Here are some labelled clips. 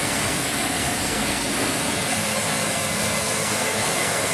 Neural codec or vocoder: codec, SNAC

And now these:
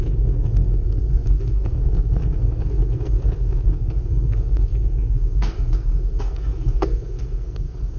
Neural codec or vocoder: codec, SNAC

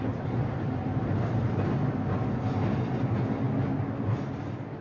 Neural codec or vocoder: none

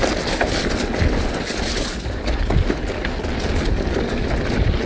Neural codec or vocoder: none